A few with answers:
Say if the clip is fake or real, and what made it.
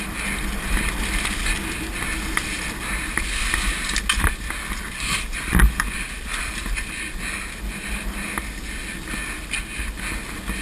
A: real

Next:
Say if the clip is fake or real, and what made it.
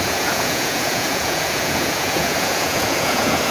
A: fake, vocoder, Vocos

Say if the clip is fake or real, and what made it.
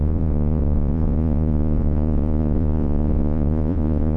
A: fake, vocoder, Vocos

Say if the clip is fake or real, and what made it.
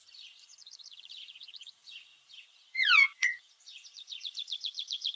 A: fake, vocoder, Vocos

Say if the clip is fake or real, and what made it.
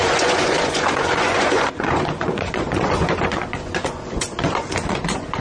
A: fake, vocoder, Vocos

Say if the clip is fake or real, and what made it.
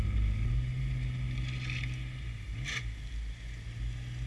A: real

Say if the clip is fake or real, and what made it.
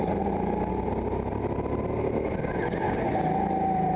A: real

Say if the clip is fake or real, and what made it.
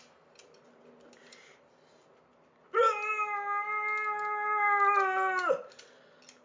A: real